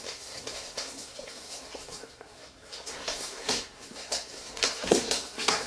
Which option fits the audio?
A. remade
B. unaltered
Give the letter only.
A